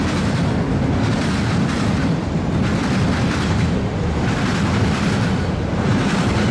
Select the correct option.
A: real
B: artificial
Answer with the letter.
A